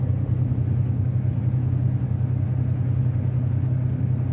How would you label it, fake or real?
real